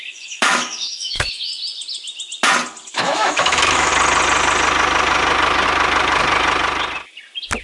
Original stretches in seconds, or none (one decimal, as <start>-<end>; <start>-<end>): 1.5-2.9; 3.9-7.6